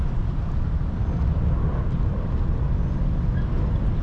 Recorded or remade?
recorded